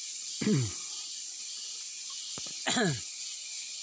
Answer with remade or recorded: recorded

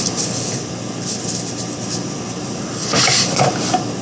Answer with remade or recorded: recorded